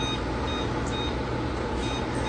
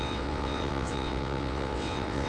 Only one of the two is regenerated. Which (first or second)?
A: second